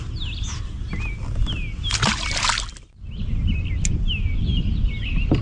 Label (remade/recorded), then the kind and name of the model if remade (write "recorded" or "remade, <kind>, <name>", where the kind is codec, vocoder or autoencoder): recorded